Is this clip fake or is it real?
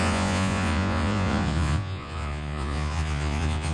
fake